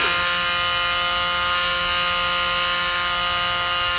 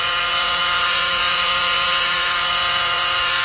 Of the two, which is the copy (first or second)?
second